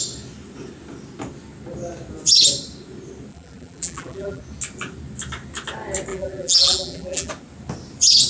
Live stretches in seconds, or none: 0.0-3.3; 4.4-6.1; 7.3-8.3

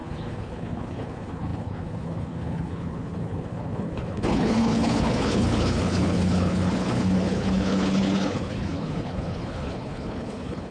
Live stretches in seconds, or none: none

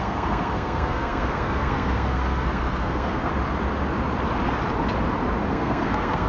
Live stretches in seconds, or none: 3.3-5.5

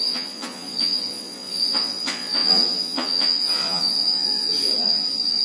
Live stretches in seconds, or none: none

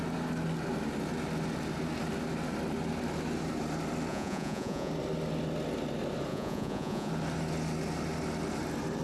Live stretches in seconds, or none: 0.0-4.1; 4.9-6.3; 7.1-9.0